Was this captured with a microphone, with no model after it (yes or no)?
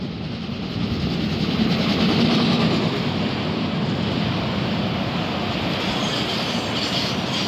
yes